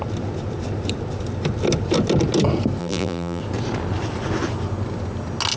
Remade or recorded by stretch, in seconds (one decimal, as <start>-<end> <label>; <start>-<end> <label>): 0.0-2.8 recorded; 2.8-3.4 remade; 3.4-5.6 recorded